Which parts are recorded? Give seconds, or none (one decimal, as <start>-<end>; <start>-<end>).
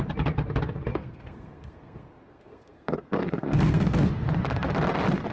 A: 0.0-0.9; 4.1-5.3